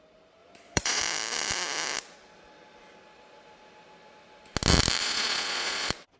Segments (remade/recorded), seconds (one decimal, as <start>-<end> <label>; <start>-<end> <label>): 0.0-0.4 recorded; 0.4-1.0 remade; 1.0-5.0 recorded; 5.0-6.2 remade